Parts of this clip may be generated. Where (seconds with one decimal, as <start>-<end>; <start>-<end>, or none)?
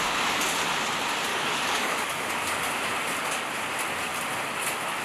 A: 1.3-2.3